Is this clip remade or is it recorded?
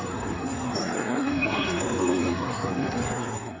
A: remade